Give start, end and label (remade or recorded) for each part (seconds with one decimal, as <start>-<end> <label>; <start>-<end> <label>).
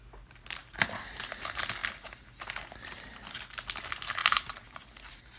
0.0-4.2 recorded; 4.2-4.8 remade; 4.8-5.4 recorded